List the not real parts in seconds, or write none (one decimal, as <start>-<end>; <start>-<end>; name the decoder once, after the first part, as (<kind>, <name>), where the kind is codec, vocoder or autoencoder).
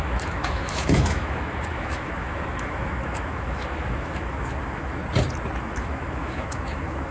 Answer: 0.0-5.0 (autoencoder, DAC-VAE); 5.6-7.1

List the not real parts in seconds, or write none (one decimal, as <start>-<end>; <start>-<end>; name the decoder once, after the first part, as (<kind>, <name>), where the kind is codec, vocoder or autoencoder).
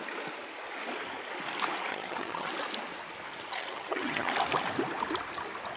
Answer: 1.9-2.5 (vocoder, HiFi-GAN); 3.5-4.3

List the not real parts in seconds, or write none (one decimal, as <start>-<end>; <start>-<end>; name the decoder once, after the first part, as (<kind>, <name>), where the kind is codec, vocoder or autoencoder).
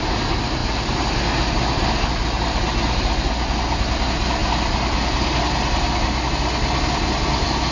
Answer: none